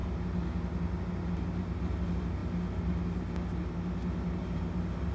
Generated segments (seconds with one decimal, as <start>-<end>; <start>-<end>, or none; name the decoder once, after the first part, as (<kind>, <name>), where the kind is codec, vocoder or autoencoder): none